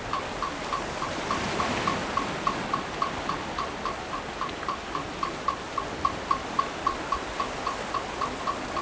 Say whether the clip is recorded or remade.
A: recorded